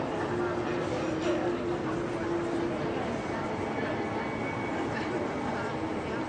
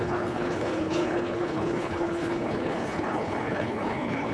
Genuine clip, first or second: first